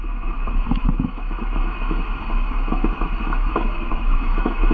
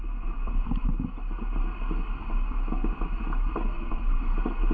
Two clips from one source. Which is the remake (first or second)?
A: first